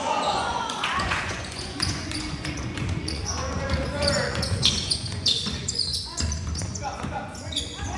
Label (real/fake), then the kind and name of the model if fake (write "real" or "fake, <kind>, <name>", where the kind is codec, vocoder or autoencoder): fake, vocoder, Vocos